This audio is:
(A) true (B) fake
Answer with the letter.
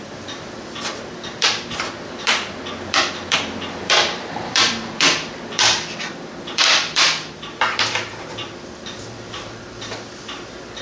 B